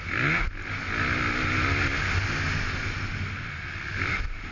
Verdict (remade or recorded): recorded